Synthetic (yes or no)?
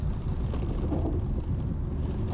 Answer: no